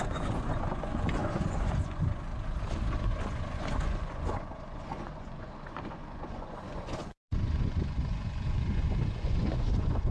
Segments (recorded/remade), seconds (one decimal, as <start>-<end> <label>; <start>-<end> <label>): 0.0-2.3 remade; 2.3-3.0 recorded; 3.0-10.1 remade